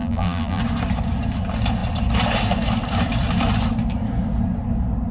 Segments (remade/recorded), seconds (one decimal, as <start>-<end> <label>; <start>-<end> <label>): 0.0-0.6 remade; 0.6-5.1 recorded